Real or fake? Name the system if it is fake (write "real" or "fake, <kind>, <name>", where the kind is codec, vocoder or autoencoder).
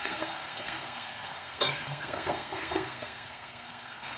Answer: fake, codec, SNAC